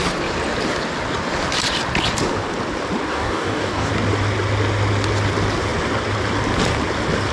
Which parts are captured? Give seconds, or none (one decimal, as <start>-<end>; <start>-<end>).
0.0-3.1; 3.9-7.3